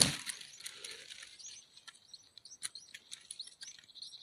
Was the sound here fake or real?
real